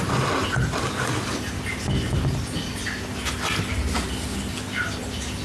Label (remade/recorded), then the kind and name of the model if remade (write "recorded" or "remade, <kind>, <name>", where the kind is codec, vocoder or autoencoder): recorded